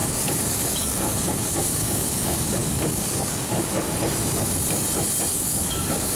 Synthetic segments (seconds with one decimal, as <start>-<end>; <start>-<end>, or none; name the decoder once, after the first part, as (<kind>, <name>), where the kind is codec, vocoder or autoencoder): 0.0-3.7 (codec, DAC); 5.3-6.2